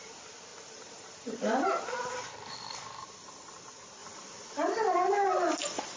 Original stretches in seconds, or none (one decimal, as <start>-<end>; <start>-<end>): 0.0-0.5; 3.4-4.0; 4.6-6.0